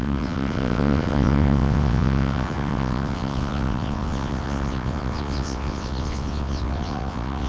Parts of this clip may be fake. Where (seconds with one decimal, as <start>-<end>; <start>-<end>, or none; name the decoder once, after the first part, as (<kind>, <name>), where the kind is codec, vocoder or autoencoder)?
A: 0.0-7.5 (vocoder, WaveNeXt)

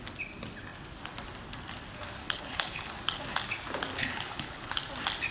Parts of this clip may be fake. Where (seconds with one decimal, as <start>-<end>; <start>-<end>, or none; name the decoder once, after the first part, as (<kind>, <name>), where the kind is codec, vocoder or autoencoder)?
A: 2.2-2.9 (codec, HILCodec); 4.0-4.7

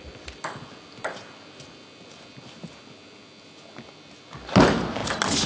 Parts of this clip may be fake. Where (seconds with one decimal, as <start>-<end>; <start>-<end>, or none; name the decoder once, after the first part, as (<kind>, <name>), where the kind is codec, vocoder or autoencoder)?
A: none

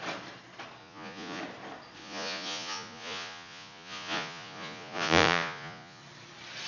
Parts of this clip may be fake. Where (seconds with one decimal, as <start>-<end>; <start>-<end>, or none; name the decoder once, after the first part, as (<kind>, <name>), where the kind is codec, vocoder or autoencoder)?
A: 0.8-1.4 (vocoder, Vocos); 2.0-6.0

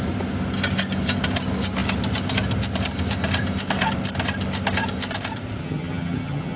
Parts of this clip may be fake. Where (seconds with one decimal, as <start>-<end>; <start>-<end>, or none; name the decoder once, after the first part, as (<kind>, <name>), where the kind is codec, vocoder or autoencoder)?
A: 5.6-6.6 (vocoder, HiFi-GAN)

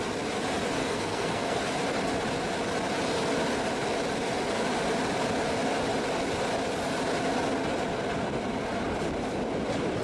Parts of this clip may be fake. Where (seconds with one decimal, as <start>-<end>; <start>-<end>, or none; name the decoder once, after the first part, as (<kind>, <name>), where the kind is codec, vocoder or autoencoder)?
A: 0.8-1.6 (codec, SNAC)

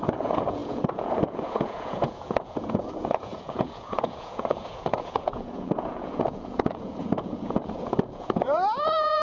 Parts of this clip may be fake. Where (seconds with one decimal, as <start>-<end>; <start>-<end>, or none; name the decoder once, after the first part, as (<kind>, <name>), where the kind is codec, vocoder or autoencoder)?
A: 0.0-9.2 (vocoder, Vocos)